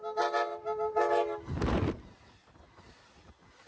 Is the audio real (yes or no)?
yes